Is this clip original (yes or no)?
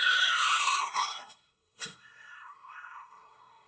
no